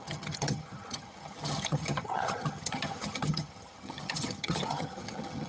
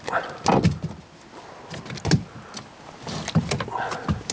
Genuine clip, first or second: second